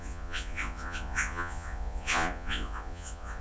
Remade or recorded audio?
remade